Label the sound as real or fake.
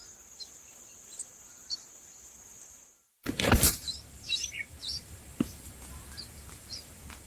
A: fake